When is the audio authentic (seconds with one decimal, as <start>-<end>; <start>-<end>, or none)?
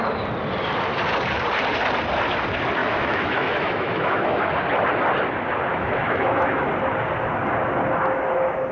0.0-2.8; 4.5-5.7; 6.7-8.7